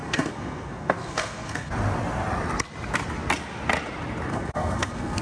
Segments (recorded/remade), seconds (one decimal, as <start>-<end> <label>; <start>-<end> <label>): 0.0-1.7 remade; 1.7-4.3 recorded; 4.3-5.2 remade

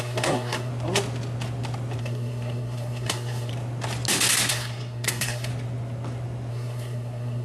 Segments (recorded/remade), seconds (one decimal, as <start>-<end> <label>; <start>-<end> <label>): 0.0-0.7 remade; 0.7-2.0 recorded; 2.0-3.5 remade; 3.5-4.5 recorded; 4.5-5.5 remade; 5.5-6.5 recorded; 6.5-7.4 remade